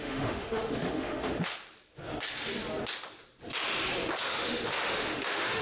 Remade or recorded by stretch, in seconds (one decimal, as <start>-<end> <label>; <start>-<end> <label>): 0.0-1.5 remade; 1.5-4.2 recorded; 4.2-5.6 remade